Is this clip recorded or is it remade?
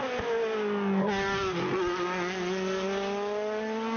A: recorded